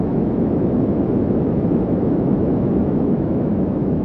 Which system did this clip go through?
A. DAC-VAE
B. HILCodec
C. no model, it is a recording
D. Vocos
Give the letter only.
A